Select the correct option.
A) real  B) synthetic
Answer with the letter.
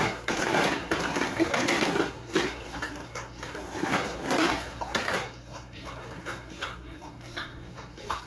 B